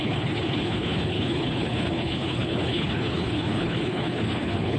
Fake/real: fake